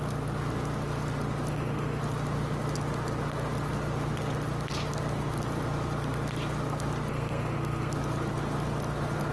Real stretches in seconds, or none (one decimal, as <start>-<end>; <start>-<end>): 0.0-1.5; 2.0-7.1; 7.9-9.3